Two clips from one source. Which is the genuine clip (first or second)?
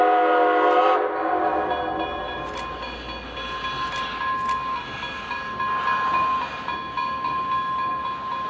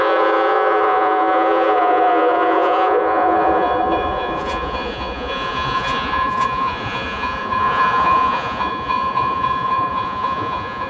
first